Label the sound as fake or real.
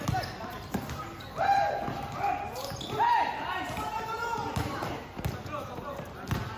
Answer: real